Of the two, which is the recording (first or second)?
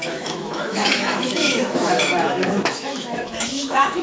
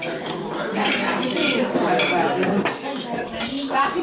second